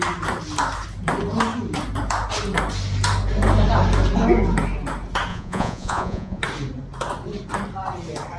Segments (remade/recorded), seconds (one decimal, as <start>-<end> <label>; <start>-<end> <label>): 0.0-5.3 recorded; 5.3-6.4 remade; 6.4-8.4 recorded